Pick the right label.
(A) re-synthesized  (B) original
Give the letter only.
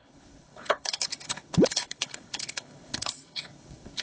A